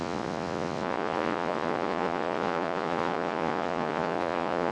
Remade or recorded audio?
remade